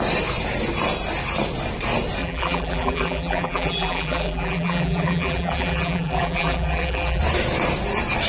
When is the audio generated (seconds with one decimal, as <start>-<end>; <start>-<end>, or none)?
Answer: 2.2-7.2